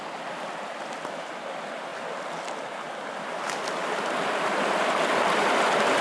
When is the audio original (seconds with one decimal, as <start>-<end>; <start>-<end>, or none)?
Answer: 0.0-6.0